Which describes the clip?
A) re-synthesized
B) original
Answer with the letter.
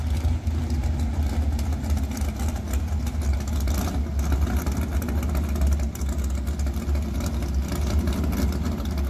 B